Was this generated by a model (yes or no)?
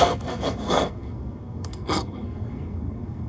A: yes